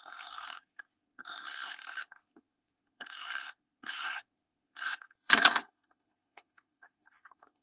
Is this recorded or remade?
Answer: remade